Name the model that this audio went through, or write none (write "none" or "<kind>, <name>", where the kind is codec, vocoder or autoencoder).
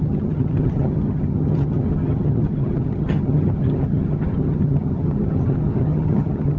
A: vocoder, HiFi-GAN